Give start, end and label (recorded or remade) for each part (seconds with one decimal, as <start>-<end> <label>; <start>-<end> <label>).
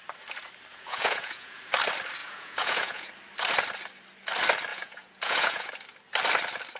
0.0-0.7 recorded; 0.7-1.6 remade; 1.6-2.2 recorded; 2.2-3.1 remade; 3.1-4.7 recorded; 4.7-5.7 remade; 5.7-6.8 recorded